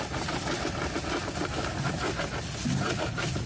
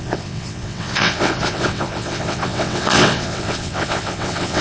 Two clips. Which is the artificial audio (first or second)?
second